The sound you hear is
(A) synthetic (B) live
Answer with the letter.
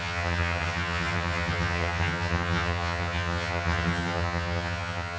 A